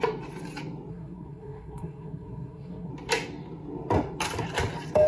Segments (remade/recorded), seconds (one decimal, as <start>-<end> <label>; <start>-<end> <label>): 0.0-0.9 recorded; 0.9-2.9 remade; 2.9-5.1 recorded